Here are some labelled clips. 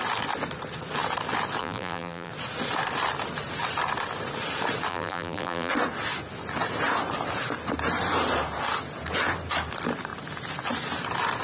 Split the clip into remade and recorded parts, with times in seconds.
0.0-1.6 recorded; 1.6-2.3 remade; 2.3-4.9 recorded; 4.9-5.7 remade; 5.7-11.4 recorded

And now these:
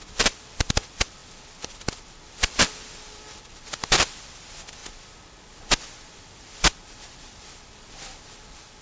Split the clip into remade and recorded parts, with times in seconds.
0.0-4.8 remade; 4.8-6.1 recorded; 6.1-8.8 remade

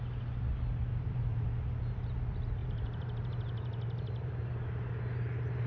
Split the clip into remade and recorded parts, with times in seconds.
0.0-0.9 recorded; 0.9-1.5 remade; 1.5-2.6 recorded; 2.6-4.5 remade; 4.5-5.7 recorded

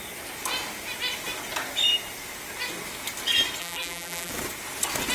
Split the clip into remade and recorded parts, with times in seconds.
0.0-3.6 recorded; 3.6-4.3 remade; 4.3-5.1 recorded